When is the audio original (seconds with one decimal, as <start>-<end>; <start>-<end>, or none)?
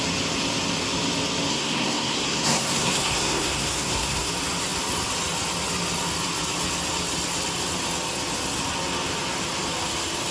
0.0-1.5; 4.3-10.3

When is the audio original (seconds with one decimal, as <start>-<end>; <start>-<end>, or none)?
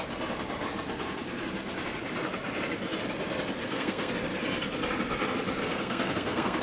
0.0-3.6; 4.1-5.6